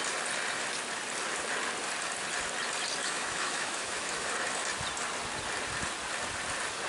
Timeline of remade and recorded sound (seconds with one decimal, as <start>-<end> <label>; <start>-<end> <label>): 0.0-3.0 recorded; 3.0-4.3 remade; 4.3-6.9 recorded